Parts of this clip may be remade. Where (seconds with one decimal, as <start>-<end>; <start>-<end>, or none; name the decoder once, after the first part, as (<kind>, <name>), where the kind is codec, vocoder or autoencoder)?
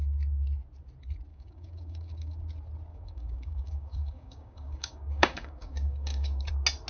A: 1.3-2.4 (codec, DAC); 2.9-6.5